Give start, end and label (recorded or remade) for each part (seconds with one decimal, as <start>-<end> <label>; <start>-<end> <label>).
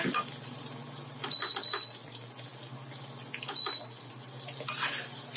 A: 0.0-5.4 recorded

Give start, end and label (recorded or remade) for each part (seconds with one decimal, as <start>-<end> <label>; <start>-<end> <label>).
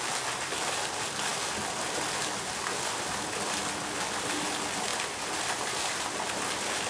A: 0.0-6.9 recorded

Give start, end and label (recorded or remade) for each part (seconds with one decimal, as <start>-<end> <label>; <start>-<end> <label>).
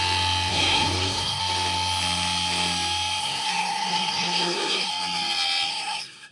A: 0.0-0.5 recorded; 0.5-1.4 remade; 1.4-3.2 recorded; 3.2-4.9 remade; 4.9-5.7 recorded; 5.7-6.3 remade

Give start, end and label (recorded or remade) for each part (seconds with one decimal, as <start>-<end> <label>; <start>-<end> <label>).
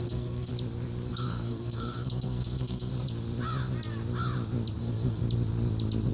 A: 0.0-0.5 remade; 0.5-1.1 recorded; 1.1-2.9 remade; 2.9-4.8 recorded; 4.8-5.2 remade; 5.2-6.1 recorded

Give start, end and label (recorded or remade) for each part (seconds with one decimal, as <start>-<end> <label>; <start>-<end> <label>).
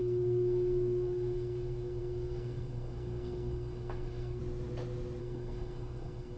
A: 0.0-4.4 remade; 4.4-5.2 recorded; 5.2-6.4 remade